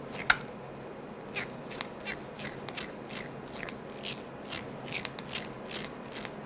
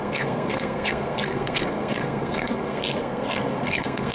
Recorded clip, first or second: first